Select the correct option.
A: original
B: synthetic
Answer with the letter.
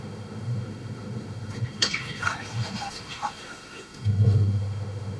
B